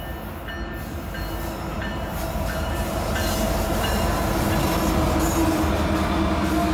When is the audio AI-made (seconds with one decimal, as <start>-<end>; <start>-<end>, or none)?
1.7-4.5

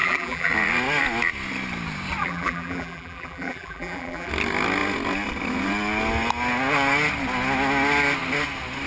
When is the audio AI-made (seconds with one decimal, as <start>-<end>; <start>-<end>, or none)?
0.0-0.5; 2.2-4.3

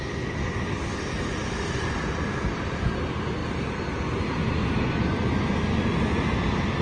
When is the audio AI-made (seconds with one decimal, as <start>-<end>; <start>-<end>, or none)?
1.4-2.0; 3.4-4.0; 4.6-5.1

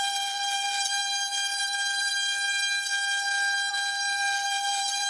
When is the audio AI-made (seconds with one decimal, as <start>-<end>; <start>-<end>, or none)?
0.0-1.0; 1.6-2.1; 3.7-5.1

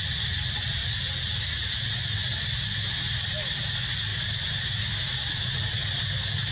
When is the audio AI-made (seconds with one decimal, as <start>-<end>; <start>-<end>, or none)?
4.1-6.1